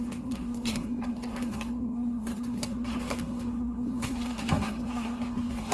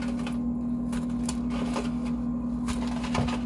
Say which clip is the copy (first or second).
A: first